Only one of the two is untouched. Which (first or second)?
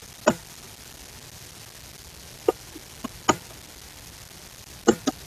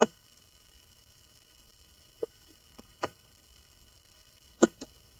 first